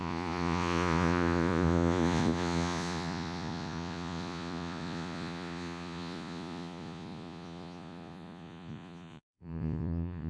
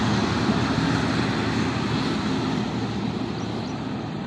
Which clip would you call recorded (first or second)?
second